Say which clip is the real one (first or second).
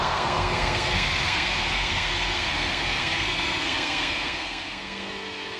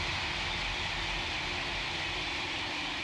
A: second